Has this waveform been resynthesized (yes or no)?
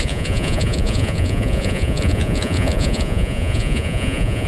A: yes